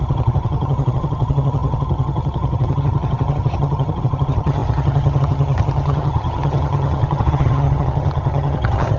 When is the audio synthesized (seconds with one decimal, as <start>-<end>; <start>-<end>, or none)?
0.0-9.0